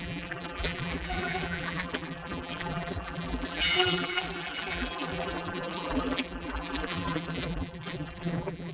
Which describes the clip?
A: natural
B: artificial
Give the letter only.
B